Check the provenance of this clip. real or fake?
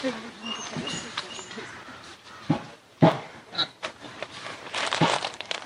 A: fake